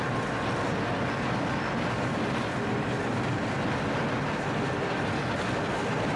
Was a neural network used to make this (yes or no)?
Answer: no